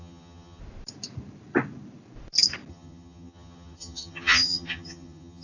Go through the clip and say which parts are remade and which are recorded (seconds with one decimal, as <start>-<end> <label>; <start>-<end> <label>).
0.0-0.6 remade; 0.6-2.7 recorded; 2.7-5.4 remade